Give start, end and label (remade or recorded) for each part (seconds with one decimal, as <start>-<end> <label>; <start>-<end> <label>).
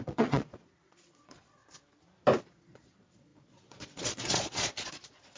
0.0-1.6 remade; 1.6-2.5 recorded; 2.5-5.4 remade